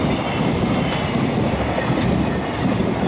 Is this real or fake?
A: real